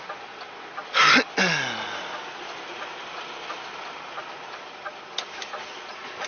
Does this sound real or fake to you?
real